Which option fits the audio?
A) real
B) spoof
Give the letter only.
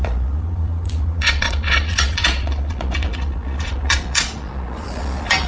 B